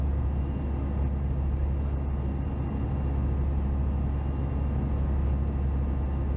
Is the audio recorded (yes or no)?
yes